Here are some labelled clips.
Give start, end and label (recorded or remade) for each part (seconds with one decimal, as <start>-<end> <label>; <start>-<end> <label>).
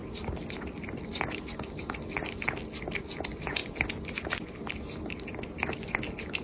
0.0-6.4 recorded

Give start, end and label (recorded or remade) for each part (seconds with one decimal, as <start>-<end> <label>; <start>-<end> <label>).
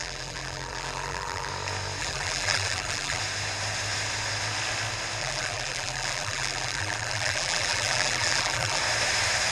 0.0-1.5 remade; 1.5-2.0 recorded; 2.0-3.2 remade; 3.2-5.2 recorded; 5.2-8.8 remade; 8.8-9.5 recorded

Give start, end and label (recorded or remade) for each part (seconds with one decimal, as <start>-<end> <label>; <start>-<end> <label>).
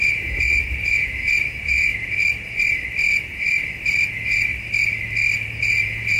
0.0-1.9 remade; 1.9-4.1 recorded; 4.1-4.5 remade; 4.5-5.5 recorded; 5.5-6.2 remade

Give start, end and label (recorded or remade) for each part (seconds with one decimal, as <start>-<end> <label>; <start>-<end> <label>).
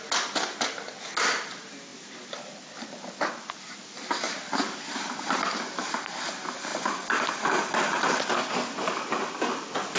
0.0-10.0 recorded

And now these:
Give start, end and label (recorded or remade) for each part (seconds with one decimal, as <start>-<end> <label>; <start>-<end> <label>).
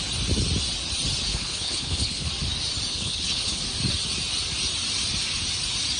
0.0-1.3 recorded; 1.3-2.3 remade; 2.3-2.9 recorded; 2.9-3.6 remade; 3.6-6.0 recorded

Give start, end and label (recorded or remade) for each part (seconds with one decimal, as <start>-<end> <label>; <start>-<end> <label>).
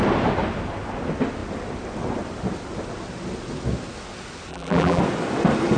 0.0-4.5 recorded; 4.5-5.0 remade; 5.0-5.8 recorded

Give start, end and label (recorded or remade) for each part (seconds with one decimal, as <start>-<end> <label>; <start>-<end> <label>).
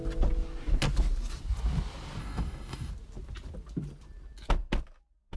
0.0-2.2 recorded; 2.2-2.9 remade; 2.9-5.4 recorded